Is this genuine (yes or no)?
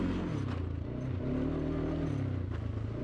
yes